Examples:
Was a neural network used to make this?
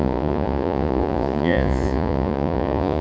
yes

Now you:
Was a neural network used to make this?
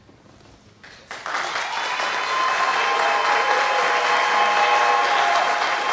no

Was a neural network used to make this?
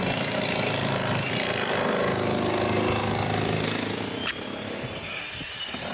no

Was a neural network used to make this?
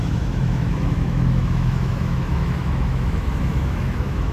yes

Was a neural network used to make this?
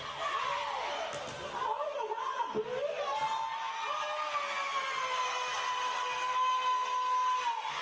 no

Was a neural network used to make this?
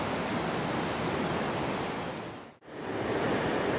no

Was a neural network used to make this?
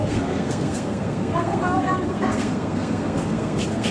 yes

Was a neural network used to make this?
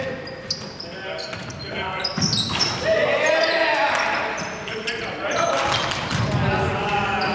no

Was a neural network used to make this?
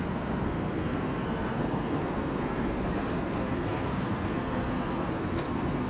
yes